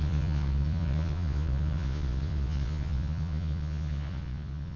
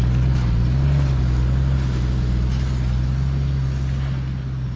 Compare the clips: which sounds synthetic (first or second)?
first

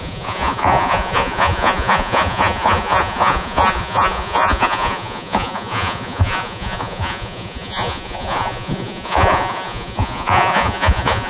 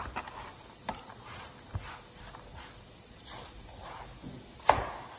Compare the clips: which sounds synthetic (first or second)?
first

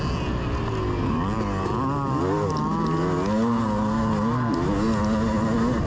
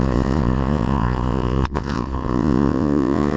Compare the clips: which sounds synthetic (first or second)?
second